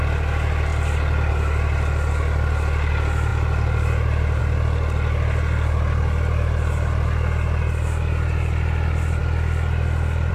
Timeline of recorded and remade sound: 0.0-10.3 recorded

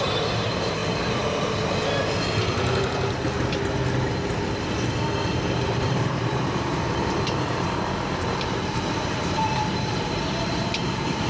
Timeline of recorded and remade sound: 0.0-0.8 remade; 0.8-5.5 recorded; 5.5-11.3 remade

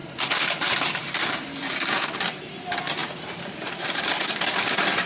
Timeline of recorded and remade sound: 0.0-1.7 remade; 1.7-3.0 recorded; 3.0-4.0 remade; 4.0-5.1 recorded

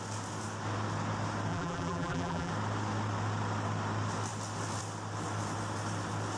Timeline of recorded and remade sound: 0.0-1.5 recorded; 1.5-2.5 remade; 2.5-6.4 recorded

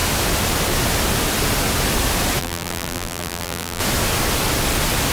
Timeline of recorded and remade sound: 0.0-2.4 recorded; 2.4-3.8 remade; 3.8-5.1 recorded